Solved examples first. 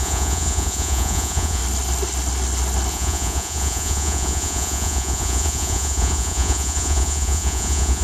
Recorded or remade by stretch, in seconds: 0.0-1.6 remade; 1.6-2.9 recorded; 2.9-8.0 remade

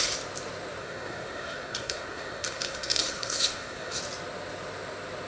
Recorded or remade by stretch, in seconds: 0.0-0.8 recorded; 0.8-4.0 remade; 4.0-5.3 recorded